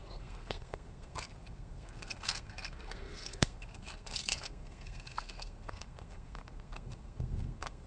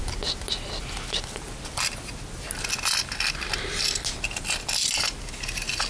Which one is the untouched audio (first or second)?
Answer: second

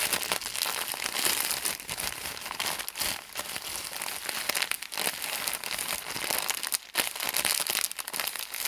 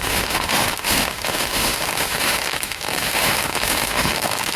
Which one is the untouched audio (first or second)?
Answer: first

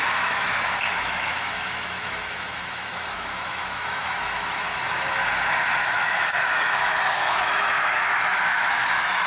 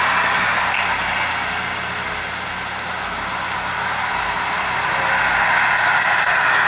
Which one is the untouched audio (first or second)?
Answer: second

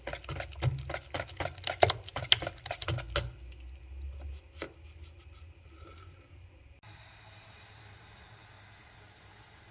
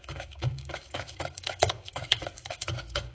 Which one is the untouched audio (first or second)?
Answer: first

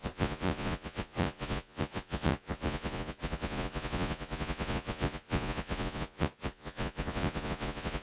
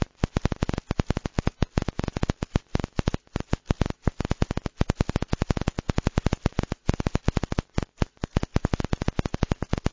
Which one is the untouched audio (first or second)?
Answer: second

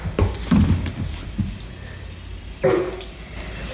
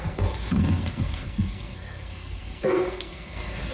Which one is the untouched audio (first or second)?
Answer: first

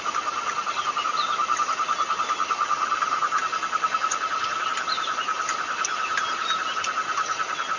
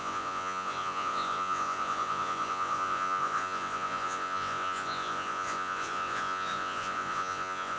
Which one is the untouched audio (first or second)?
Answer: first